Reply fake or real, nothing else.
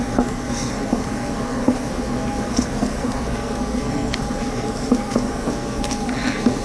fake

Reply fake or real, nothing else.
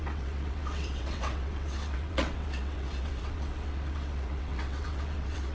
fake